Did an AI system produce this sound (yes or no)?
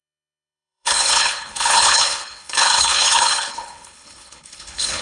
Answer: yes